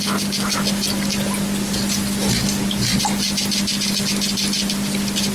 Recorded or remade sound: recorded